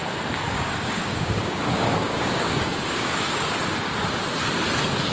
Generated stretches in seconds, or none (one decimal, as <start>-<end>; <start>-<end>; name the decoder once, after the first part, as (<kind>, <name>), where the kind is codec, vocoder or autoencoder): 0.5-3.6 (codec, DAC)